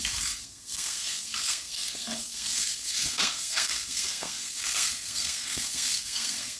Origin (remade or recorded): remade